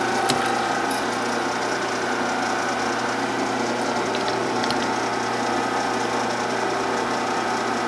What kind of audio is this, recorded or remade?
recorded